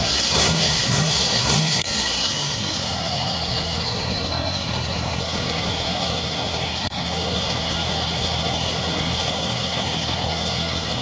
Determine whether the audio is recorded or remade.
remade